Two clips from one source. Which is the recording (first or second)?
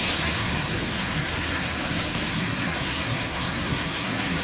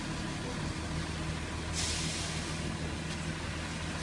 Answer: second